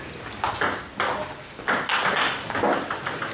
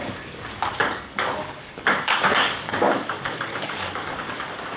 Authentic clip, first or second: first